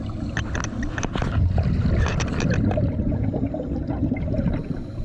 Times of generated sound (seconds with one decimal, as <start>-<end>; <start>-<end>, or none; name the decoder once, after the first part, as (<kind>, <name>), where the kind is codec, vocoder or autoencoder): none